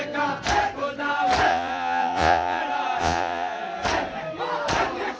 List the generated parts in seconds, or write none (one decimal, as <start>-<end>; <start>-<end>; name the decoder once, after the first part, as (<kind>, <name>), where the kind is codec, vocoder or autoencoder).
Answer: 1.5-2.6 (vocoder, Vocos); 3.0-3.6